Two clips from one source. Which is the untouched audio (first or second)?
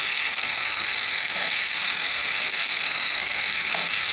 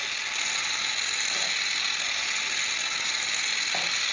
second